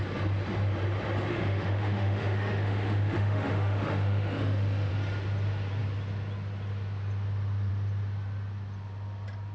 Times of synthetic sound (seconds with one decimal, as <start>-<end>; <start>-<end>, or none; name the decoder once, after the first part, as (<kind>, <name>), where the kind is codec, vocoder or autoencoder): 1.3-4.9 (autoencoder, DAC-VAE)